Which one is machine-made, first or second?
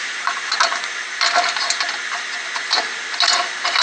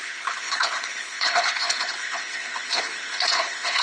second